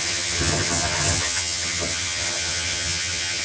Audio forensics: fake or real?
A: fake